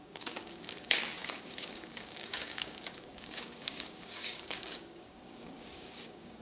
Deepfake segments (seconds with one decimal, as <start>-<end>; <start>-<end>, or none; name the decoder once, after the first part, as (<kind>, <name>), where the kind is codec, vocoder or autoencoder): 0.0-6.4 (codec, DAC)